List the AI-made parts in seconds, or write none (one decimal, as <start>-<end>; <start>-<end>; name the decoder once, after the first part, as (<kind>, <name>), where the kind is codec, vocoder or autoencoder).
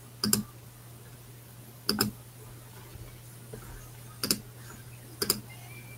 none